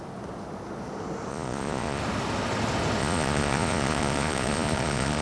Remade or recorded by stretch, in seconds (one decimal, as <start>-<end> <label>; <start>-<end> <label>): 0.0-1.3 recorded; 1.3-2.0 remade; 2.0-3.0 recorded; 3.0-5.2 remade